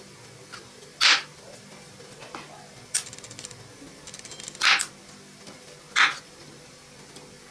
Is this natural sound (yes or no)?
yes